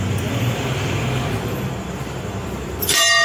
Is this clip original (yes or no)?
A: no